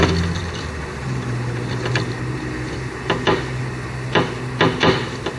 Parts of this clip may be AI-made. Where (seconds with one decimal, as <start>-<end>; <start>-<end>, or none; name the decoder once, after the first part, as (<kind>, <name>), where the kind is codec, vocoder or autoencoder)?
none